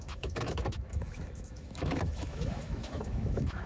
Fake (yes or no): yes